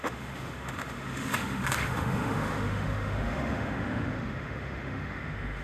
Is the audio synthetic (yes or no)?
yes